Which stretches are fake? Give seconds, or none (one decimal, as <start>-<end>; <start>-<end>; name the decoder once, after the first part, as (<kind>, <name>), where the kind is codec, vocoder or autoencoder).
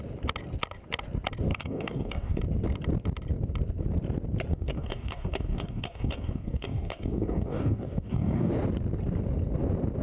1.5-2.4 (codec, DAC); 4.5-8.5